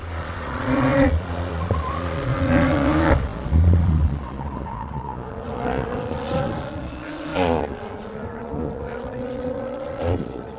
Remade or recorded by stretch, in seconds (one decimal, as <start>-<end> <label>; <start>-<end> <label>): 0.0-10.6 remade